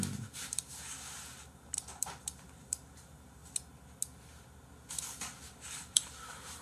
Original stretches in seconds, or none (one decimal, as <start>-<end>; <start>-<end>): 3.4-5.4